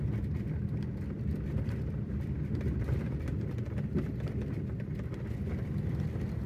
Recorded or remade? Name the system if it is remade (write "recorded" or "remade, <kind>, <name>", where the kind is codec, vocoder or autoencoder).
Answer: recorded